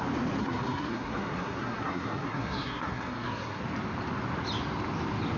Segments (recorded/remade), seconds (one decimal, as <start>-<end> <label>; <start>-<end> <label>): 0.0-0.4 recorded; 0.4-3.6 remade; 3.6-5.4 recorded